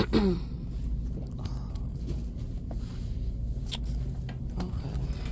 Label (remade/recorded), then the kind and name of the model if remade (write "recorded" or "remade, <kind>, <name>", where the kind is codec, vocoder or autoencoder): recorded